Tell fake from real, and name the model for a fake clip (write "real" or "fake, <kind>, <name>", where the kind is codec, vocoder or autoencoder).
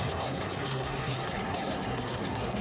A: fake, codec, SNAC